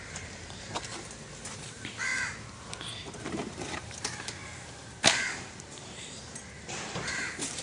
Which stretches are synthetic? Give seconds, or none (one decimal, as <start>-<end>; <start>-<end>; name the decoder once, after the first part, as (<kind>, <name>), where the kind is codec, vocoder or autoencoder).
0.0-7.6 (vocoder, BigVGAN v2)